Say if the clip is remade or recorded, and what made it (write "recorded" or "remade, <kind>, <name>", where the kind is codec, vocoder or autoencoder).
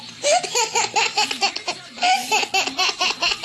recorded